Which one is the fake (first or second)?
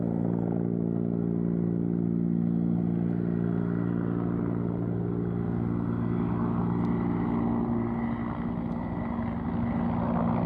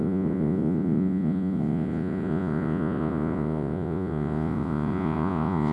second